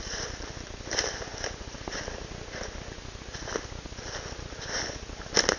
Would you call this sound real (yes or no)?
yes